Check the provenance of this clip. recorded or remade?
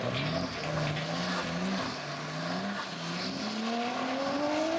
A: recorded